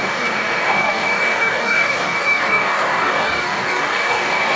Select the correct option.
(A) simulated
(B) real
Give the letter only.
A